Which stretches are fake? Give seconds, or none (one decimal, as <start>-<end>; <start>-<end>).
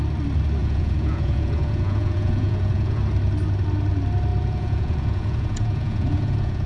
0.6-3.0; 4.3-6.7